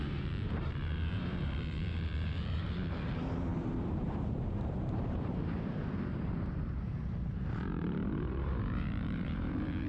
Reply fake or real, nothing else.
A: fake